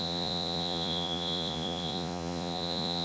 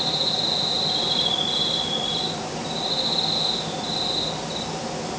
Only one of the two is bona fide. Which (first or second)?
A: second